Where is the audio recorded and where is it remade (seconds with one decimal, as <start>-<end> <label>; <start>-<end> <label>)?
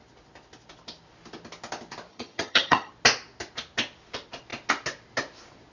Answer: 0.0-2.1 recorded; 2.1-2.9 remade; 2.9-5.7 recorded